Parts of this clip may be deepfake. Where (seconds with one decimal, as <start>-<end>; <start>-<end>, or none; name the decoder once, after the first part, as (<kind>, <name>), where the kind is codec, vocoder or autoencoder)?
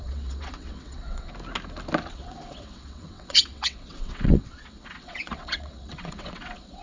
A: 0.0-1.3 (vocoder, WaveNeXt); 2.1-6.8